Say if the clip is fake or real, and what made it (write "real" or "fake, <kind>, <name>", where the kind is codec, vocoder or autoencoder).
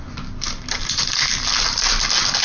real